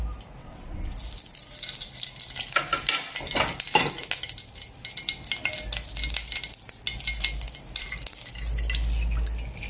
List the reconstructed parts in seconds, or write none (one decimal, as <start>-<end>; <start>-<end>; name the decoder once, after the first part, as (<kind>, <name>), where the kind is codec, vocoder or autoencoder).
0.4-0.9 (vocoder, WaveNeXt)